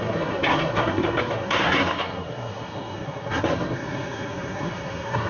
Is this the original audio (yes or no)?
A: no